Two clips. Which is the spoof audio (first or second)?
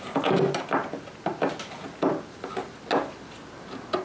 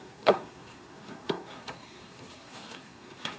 second